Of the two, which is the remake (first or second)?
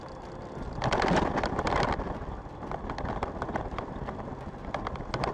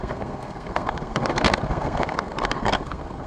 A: second